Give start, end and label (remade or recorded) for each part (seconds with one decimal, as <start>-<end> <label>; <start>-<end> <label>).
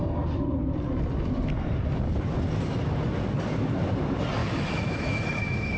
0.0-4.4 recorded; 4.4-5.8 remade